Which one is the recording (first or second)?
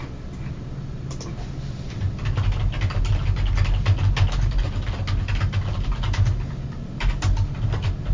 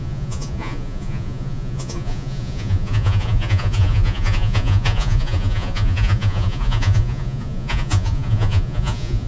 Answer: first